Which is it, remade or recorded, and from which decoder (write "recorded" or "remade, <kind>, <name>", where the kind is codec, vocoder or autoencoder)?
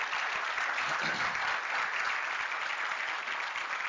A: recorded